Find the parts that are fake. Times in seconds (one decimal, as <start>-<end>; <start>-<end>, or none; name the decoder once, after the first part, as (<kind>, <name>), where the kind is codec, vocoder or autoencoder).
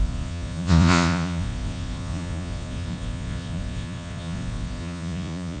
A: 0.0-5.6 (vocoder, Vocos)